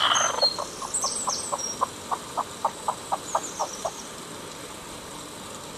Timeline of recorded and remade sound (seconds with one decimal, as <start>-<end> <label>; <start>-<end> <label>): 0.0-3.6 recorded; 3.6-4.2 remade; 4.2-5.8 recorded